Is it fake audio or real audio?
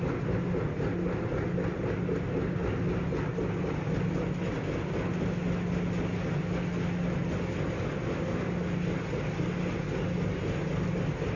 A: real